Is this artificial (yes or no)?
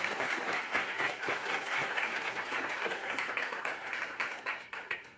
yes